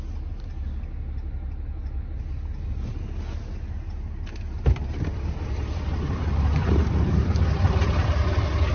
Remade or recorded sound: recorded